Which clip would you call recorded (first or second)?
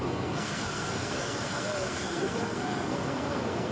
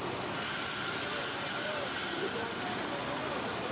second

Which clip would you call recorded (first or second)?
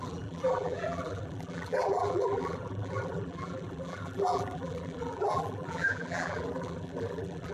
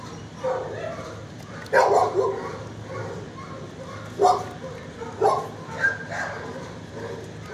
second